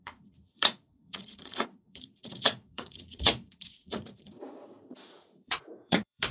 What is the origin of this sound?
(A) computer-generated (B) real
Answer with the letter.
A